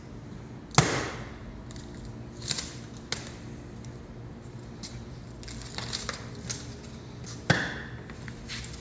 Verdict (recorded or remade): recorded